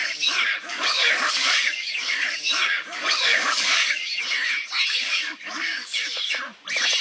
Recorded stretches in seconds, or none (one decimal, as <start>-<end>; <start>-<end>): 4.2-4.9; 6.3-7.0